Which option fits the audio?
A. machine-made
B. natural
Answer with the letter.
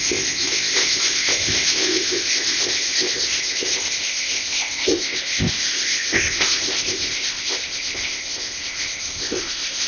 A